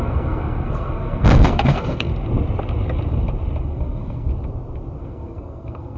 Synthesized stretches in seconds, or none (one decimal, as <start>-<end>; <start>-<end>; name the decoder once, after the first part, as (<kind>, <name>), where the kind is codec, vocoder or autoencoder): 0.0-2.1 (codec, SNAC); 3.6-4.3; 5.0-6.0

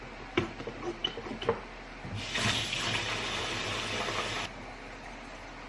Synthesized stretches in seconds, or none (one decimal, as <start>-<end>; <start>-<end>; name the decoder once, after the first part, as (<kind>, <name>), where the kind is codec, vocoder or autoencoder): none

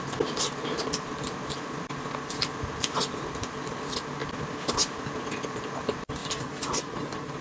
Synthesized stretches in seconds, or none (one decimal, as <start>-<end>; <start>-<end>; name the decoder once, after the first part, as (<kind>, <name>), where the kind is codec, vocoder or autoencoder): none